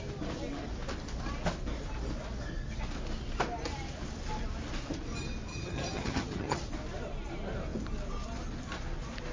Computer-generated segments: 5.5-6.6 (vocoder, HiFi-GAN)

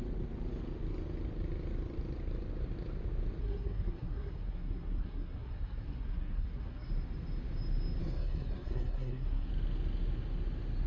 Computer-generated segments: 3.4-6.9 (codec, SNAC); 8.0-9.5

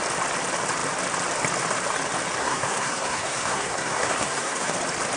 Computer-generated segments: 2.4-4.7 (codec, SNAC)